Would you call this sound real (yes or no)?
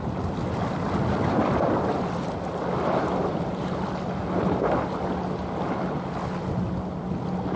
yes